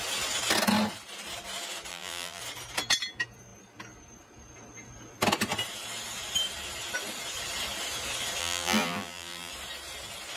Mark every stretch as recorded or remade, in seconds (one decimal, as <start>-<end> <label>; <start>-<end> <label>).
0.0-1.9 recorded; 1.9-2.4 remade; 2.4-8.4 recorded; 8.4-9.5 remade; 9.5-10.4 recorded